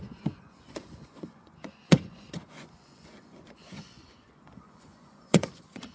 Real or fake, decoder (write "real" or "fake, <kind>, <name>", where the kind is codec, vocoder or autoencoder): fake, vocoder, Vocos